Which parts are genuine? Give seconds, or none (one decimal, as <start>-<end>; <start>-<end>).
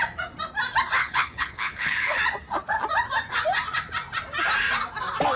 0.0-1.0; 2.2-5.4